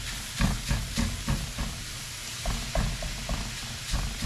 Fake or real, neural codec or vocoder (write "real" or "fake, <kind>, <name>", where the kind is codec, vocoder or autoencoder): real